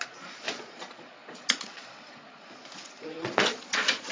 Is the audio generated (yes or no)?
yes